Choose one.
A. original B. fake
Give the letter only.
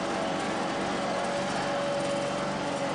A